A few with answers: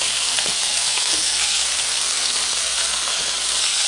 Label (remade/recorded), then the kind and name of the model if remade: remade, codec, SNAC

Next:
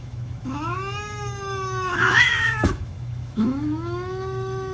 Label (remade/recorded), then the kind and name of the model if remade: remade, autoencoder, DAC-VAE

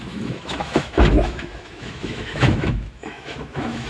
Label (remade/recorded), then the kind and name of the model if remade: remade, autoencoder, DAC-VAE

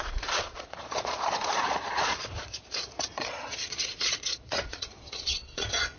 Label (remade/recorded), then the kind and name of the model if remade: remade, vocoder, Vocos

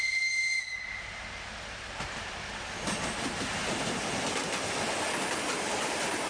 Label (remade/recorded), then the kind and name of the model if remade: recorded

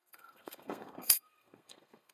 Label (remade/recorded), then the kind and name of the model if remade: remade, codec, SNAC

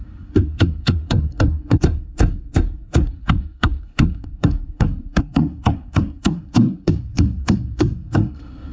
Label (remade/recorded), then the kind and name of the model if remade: remade, codec, SNAC